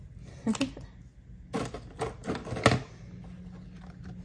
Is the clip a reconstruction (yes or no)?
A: no